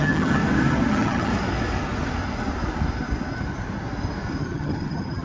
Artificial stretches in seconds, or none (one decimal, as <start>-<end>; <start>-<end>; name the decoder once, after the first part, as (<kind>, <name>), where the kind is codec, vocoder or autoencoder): 0.0-0.4 (vocoder, HiFi-GAN); 0.9-1.3; 4.4-5.2